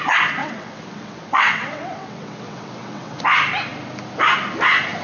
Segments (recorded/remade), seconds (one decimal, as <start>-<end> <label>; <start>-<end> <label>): 0.0-0.4 recorded; 0.4-3.2 remade; 3.2-5.0 recorded